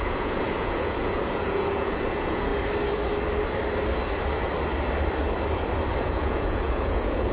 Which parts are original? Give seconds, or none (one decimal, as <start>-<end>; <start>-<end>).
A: 2.5-6.0